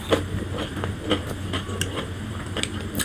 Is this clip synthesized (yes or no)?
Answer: no